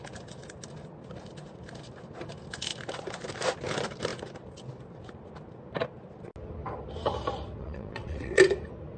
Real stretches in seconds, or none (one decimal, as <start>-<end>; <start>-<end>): 0.0-7.6; 8.4-9.0